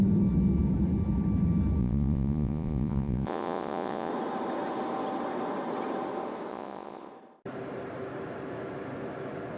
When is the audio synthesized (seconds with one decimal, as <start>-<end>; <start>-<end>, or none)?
1.8-4.1; 6.5-7.1

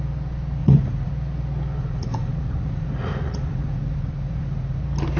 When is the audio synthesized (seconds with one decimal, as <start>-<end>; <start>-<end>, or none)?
0.6-1.1; 1.8-4.8

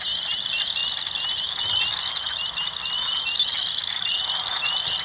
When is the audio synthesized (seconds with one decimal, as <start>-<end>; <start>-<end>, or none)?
none

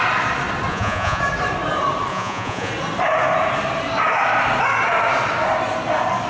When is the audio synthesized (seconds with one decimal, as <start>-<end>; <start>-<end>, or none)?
0.7-1.2; 2.1-2.7

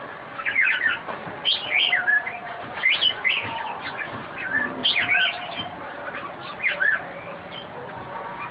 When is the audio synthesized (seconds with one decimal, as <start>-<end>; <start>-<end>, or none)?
0.0-1.2; 2.2-4.8; 7.9-8.5